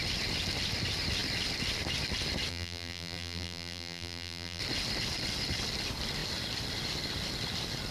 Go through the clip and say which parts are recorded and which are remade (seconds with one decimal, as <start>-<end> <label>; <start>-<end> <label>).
0.0-2.5 recorded; 2.5-4.6 remade; 4.6-7.9 recorded